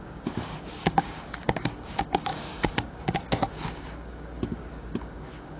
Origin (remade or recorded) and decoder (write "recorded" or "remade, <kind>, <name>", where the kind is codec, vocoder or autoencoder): remade, codec, DAC